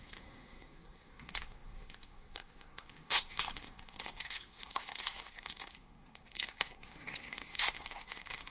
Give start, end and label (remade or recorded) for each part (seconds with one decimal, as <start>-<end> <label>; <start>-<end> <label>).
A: 0.0-8.5 remade